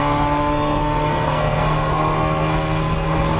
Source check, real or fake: fake